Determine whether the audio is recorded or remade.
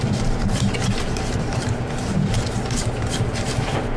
remade